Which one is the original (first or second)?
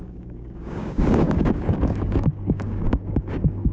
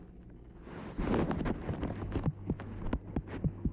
second